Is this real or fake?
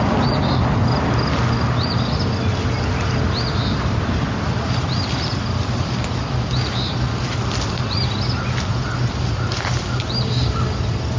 real